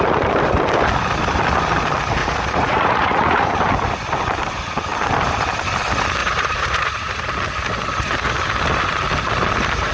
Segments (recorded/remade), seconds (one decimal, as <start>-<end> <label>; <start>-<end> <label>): 0.0-2.2 recorded; 2.2-3.5 remade; 3.5-6.2 recorded; 6.2-7.2 remade; 7.2-9.9 recorded